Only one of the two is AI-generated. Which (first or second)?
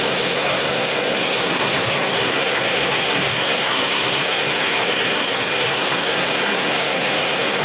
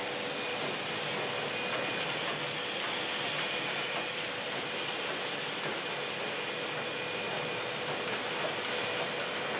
first